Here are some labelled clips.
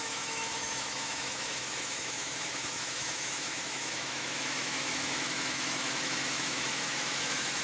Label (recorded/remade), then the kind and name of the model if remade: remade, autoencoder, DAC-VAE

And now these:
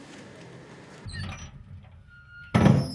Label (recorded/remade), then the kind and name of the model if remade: recorded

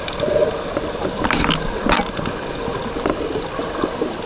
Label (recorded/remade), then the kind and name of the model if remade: recorded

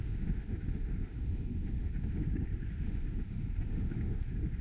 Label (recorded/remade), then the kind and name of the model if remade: remade, autoencoder, DAC-VAE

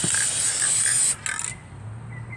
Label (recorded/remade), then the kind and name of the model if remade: recorded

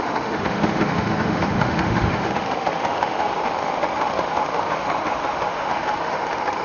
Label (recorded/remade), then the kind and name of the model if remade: remade, autoencoder, DAC-VAE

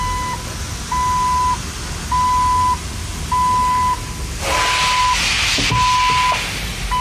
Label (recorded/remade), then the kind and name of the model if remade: recorded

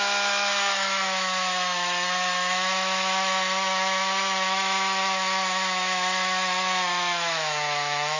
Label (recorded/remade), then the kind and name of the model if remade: remade, autoencoder, DAC-VAE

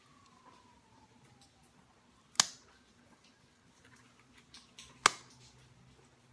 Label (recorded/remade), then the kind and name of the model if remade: recorded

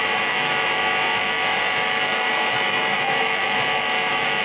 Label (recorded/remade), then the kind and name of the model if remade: remade, autoencoder, DAC-VAE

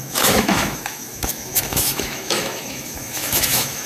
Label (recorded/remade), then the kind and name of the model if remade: remade, autoencoder, DAC-VAE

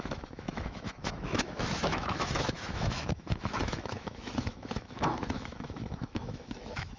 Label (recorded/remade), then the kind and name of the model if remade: remade, autoencoder, DAC-VAE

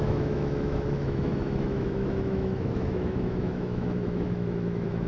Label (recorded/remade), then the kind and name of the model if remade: remade, autoencoder, DAC-VAE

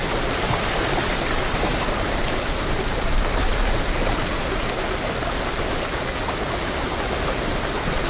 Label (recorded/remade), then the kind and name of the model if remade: recorded